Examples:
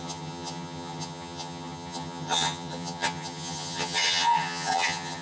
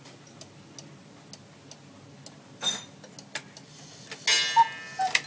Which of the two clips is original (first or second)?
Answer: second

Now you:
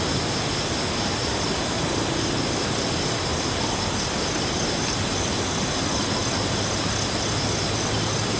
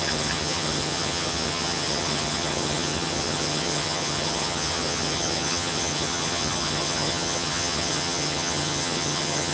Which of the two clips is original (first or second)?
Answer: first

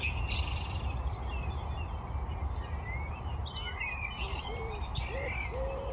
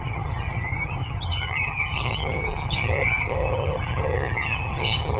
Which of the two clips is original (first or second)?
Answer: first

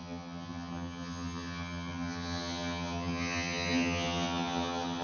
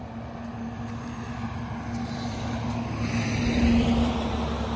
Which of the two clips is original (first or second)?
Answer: second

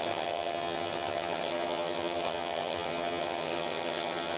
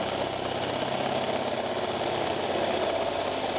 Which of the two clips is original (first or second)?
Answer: second